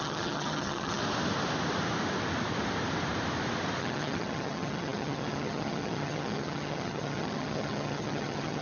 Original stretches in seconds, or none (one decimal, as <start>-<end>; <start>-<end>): 1.0-3.8